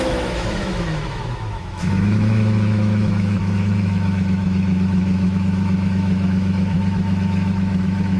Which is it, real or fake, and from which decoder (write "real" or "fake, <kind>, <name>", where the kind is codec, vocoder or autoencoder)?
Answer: fake, autoencoder, DAC-VAE